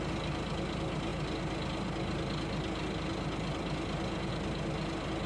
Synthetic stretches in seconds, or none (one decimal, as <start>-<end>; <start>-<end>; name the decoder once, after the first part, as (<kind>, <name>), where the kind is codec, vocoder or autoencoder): none